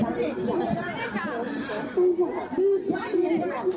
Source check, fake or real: real